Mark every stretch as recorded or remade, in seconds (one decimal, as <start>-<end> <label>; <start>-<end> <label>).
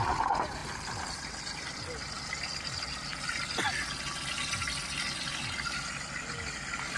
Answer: 0.0-7.0 recorded